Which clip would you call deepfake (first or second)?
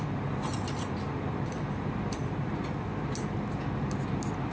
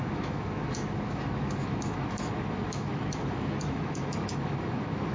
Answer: second